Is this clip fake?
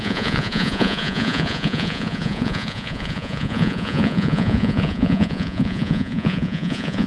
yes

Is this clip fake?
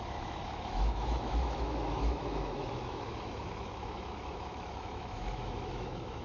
yes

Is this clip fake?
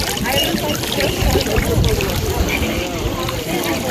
no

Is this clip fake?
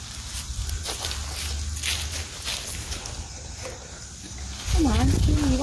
no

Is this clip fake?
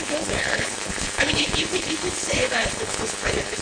yes